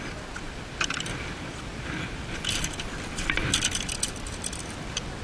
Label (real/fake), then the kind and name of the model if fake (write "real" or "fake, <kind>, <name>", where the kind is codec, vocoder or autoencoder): fake, vocoder, BigVGAN v2